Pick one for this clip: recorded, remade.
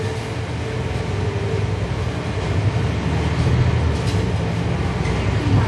recorded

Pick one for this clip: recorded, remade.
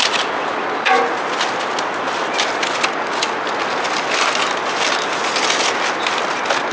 recorded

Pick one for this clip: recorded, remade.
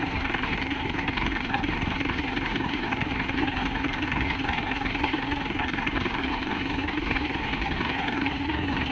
remade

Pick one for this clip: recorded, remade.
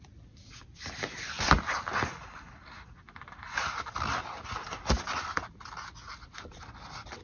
recorded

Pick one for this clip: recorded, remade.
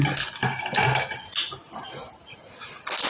recorded